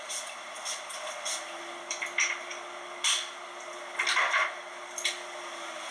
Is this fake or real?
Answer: real